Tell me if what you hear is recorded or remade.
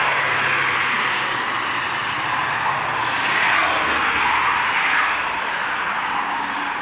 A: recorded